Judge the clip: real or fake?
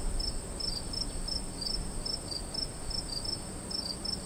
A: real